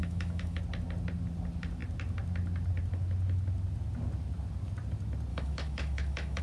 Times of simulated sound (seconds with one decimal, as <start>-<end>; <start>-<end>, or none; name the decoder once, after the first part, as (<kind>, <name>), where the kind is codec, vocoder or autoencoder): 0.0-0.6 (autoencoder, DAC-VAE); 5.3-6.4